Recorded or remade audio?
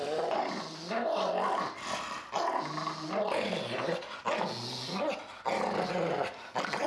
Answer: recorded